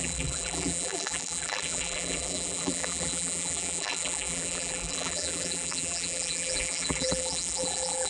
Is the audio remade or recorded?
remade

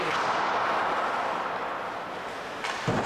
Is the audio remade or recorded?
recorded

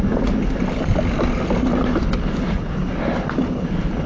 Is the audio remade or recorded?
remade